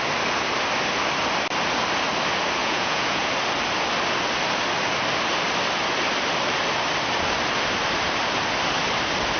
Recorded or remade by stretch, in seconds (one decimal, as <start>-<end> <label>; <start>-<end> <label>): 0.0-2.6 recorded; 2.6-3.3 remade; 3.3-9.4 recorded